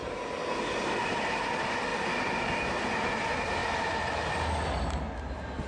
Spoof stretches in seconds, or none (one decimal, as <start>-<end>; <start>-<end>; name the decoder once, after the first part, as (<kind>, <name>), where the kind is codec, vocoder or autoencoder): none